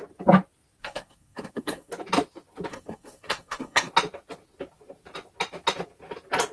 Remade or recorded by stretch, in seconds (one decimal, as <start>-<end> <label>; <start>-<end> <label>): 0.0-0.8 recorded; 0.8-1.9 remade; 1.9-2.7 recorded; 2.7-3.9 remade; 3.9-6.5 recorded